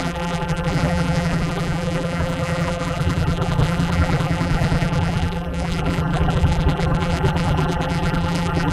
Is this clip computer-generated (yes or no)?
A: yes